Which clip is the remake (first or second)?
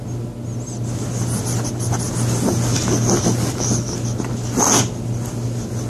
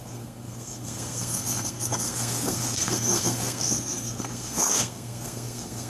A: second